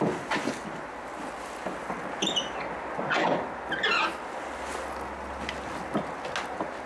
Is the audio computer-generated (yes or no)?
no